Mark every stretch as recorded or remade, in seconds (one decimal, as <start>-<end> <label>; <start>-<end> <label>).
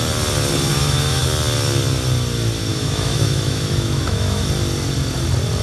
0.0-0.7 recorded; 0.7-1.2 remade; 1.2-2.7 recorded; 2.7-4.4 remade; 4.4-5.6 recorded